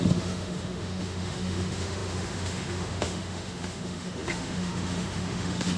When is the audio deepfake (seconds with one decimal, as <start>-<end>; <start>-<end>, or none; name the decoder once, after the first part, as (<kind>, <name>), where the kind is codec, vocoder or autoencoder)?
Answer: 0.0-5.8 (autoencoder, DAC-VAE)